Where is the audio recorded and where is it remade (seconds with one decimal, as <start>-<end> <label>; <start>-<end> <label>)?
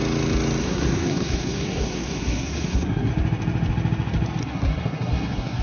0.0-0.6 recorded; 0.6-3.1 remade; 3.1-4.4 recorded; 4.4-5.6 remade